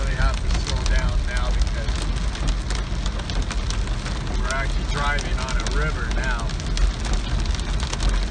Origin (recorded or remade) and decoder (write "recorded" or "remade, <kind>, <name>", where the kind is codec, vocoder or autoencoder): recorded